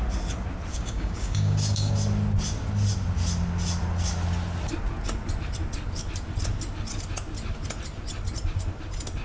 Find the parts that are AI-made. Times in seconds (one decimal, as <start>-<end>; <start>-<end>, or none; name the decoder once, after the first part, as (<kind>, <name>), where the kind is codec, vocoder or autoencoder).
0.7-1.9 (codec, DAC)